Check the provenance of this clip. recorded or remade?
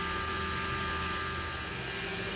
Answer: recorded